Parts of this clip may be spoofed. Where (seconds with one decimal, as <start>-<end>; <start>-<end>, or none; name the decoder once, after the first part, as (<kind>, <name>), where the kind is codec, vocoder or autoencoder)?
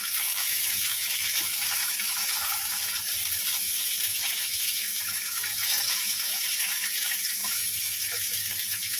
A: 0.0-2.9 (autoencoder, DAC-VAE); 3.6-9.0